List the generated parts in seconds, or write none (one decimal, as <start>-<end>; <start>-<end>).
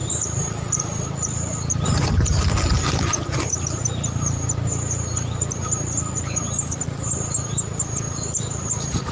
none